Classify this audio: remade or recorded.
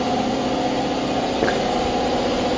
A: recorded